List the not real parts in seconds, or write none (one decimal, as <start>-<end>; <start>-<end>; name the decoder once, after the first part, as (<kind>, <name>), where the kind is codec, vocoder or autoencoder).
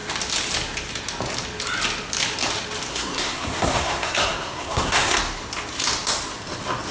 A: 2.9-5.2 (codec, SNAC)